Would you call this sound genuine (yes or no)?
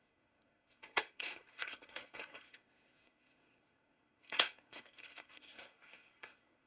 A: no